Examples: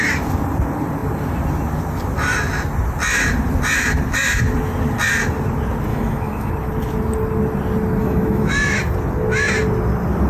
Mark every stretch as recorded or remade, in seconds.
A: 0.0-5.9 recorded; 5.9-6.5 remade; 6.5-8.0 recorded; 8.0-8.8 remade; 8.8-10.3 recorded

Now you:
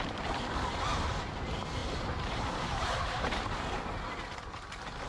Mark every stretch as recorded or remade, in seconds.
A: 0.0-1.8 recorded; 1.8-3.8 remade; 3.8-5.1 recorded

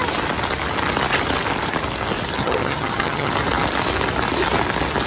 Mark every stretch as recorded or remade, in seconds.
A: 0.0-2.4 recorded; 2.4-3.3 remade; 3.3-5.1 recorded

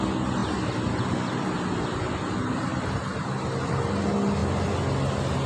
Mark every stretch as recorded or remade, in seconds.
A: 0.0-5.5 recorded

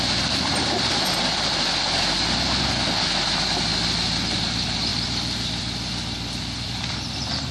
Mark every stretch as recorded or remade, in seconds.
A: 0.0-7.5 recorded

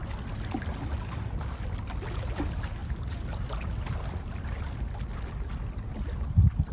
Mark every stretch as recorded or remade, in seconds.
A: 0.0-6.7 recorded

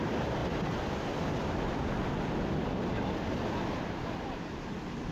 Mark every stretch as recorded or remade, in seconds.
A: 0.0-5.1 recorded

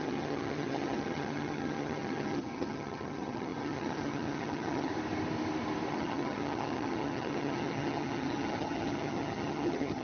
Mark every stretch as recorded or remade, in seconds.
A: 0.0-4.9 remade; 4.9-5.9 recorded; 5.9-10.0 remade